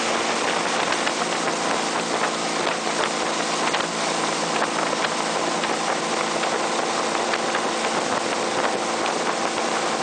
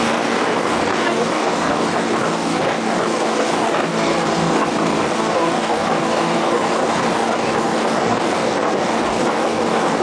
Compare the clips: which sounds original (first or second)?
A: first